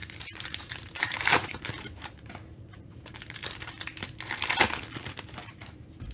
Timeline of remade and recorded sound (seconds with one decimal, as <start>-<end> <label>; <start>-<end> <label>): 0.0-3.7 remade; 3.7-5.4 recorded; 5.4-6.1 remade